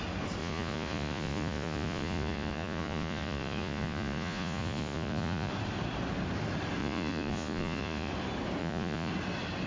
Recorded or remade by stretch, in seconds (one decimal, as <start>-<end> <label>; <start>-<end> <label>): 0.0-0.4 recorded; 0.4-5.5 remade; 5.5-6.8 recorded; 6.8-8.1 remade; 8.1-8.6 recorded; 8.6-9.1 remade; 9.1-9.7 recorded